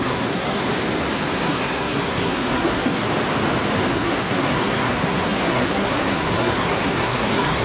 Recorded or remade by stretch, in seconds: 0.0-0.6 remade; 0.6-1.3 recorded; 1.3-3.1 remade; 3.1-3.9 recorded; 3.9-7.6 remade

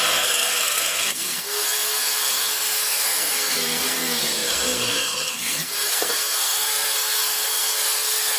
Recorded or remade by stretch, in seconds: 0.0-8.4 remade

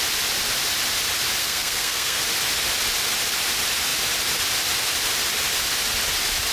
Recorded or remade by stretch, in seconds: 0.0-1.4 recorded; 1.4-2.2 remade; 2.2-6.5 recorded

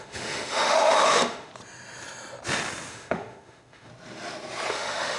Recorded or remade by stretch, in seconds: 0.0-1.5 remade; 1.5-2.9 recorded; 2.9-3.9 remade; 3.9-4.7 recorded; 4.7-5.2 remade